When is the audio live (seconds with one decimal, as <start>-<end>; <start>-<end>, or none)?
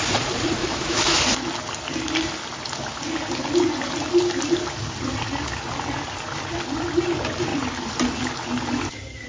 0.0-0.6; 1.2-9.3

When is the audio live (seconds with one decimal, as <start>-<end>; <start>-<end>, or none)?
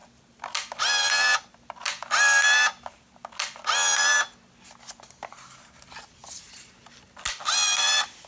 0.0-8.3